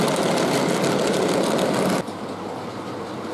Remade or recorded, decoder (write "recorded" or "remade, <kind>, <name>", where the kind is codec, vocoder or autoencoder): recorded